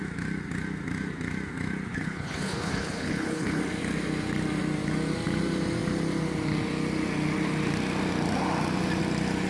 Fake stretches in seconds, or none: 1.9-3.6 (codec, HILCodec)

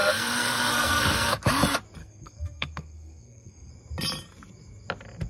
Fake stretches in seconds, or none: 0.0-1.4 (codec, SNAC); 2.0-3.7

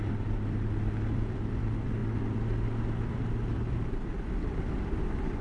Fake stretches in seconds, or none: 0.0-5.4 (vocoder, BigVGAN v2)

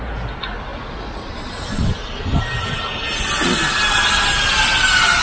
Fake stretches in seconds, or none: none

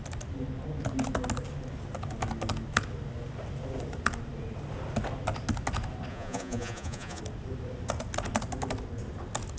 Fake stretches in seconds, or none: 6.1-7.2 (vocoder, Vocos)

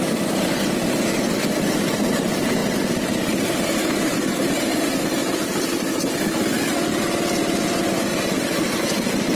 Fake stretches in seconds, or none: 8.1-8.8 (vocoder, BigVGAN v2)